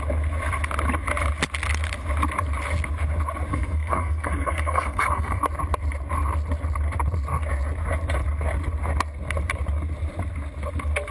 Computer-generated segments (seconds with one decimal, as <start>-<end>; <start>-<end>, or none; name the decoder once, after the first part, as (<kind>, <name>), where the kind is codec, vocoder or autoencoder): 3.5-5.4 (codec, SNAC)